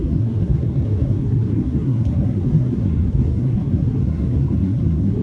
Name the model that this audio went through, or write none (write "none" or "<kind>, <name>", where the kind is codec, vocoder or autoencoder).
codec, SNAC